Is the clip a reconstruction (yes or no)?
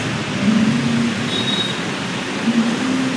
no